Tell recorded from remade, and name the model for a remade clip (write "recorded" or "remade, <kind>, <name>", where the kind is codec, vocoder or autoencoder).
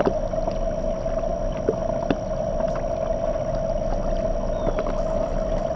recorded